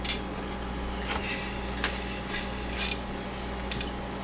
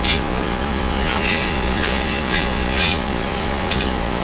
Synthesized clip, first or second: second